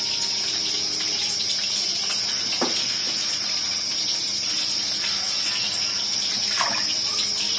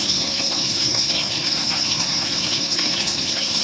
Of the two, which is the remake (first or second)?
second